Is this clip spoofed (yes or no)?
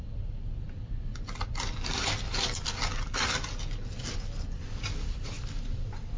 no